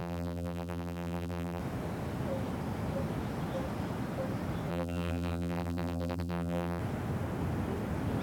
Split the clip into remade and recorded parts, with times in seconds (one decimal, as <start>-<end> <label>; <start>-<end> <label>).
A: 0.0-1.6 remade; 1.6-4.7 recorded; 4.7-6.8 remade; 6.8-8.2 recorded